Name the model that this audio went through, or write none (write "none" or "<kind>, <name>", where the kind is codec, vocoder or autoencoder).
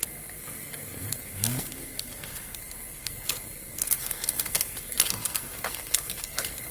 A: codec, SNAC